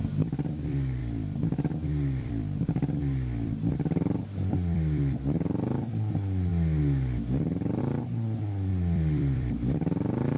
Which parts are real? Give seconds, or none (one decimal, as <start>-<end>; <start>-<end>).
6.5-7.8